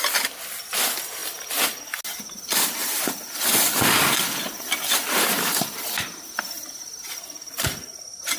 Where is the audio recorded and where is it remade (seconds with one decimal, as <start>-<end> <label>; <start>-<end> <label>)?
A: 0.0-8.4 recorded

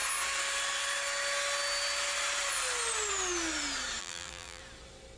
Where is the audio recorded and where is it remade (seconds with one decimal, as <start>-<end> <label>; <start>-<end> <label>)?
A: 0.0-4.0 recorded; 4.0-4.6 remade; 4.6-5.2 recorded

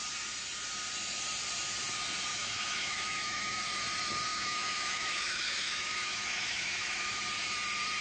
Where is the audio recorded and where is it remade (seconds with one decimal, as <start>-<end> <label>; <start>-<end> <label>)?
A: 0.0-2.3 recorded; 2.3-3.6 remade; 3.6-4.3 recorded; 4.3-7.2 remade; 7.2-8.0 recorded